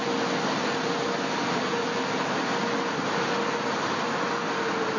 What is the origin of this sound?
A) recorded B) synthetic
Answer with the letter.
A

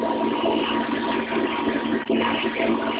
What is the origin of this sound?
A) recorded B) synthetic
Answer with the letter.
A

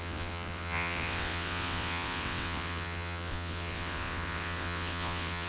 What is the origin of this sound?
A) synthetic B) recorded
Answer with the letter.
A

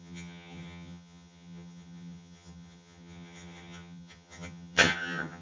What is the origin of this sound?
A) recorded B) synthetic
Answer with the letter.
B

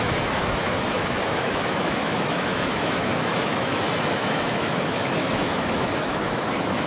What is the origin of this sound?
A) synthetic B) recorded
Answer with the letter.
A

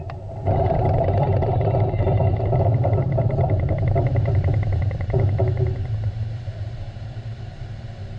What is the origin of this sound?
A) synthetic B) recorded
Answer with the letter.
A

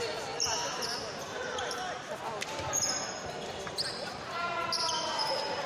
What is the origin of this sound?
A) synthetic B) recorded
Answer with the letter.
B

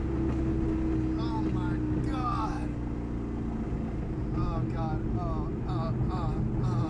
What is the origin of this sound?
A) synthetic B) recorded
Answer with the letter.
B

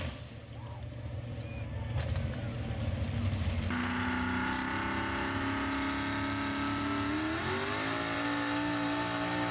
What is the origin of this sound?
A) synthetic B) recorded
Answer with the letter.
B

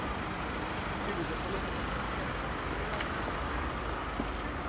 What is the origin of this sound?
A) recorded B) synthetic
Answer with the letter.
A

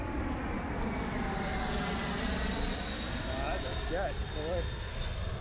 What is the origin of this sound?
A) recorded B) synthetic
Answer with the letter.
A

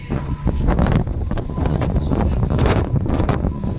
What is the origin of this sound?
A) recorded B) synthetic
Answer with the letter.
B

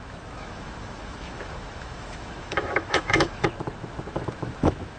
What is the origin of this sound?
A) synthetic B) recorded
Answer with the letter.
A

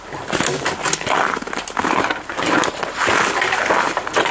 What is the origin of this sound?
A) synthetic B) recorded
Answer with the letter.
B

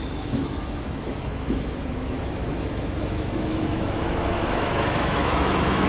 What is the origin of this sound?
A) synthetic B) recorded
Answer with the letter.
A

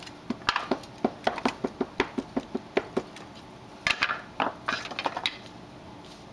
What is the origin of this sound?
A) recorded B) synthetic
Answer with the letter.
A